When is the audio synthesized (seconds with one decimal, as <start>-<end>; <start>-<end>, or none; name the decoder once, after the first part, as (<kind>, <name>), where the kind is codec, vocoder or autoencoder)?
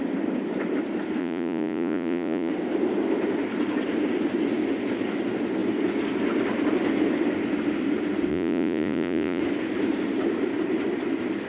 1.2-2.5 (vocoder, Vocos); 8.3-9.4